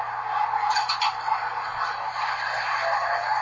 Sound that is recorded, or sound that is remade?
recorded